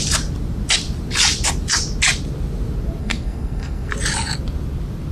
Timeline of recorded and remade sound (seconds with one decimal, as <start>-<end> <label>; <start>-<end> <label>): 0.0-3.0 recorded; 3.0-3.9 remade; 3.9-5.1 recorded